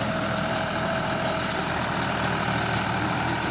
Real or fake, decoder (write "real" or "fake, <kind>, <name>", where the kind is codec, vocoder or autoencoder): fake, vocoder, BigVGAN v2